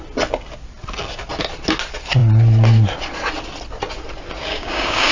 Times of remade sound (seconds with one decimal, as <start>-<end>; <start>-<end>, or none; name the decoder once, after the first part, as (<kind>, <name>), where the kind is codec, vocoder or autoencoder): 4.5-5.1 (codec, DAC)